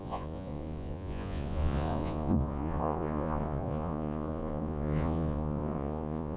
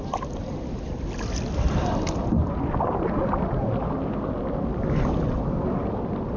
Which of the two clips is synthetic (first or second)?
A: first